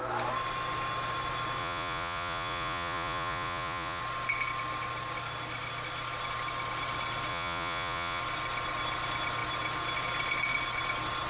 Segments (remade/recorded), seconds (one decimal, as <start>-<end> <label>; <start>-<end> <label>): 0.0-1.6 recorded; 1.6-4.0 remade; 4.0-7.3 recorded; 7.3-8.2 remade; 8.2-11.3 recorded